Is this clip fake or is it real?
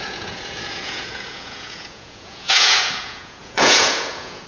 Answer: fake